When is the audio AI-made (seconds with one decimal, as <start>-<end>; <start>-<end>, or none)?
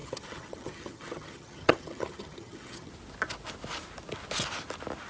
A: 0.0-2.9